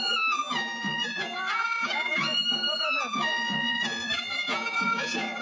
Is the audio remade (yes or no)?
yes